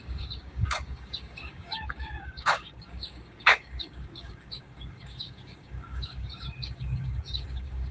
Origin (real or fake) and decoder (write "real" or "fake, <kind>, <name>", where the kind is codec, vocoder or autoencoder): fake, codec, DAC